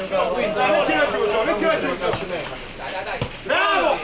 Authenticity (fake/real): real